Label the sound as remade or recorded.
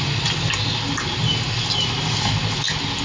recorded